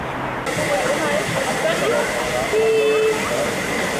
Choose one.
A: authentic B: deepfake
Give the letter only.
A